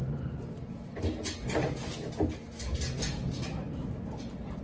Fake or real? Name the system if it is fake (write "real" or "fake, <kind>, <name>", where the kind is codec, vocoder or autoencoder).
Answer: real